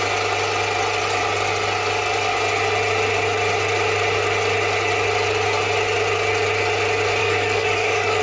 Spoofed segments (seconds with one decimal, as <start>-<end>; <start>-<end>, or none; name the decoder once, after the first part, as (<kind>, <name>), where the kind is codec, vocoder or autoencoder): 7.2-8.2 (codec, DAC)